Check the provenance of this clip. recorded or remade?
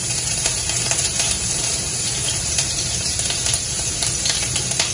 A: remade